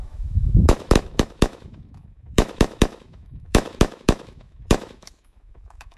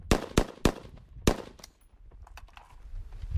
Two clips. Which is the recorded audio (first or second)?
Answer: second